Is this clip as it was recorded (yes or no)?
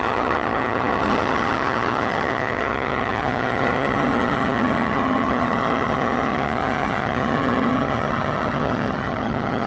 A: no